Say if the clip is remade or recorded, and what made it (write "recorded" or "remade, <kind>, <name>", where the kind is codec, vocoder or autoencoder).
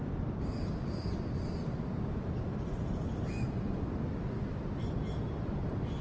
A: recorded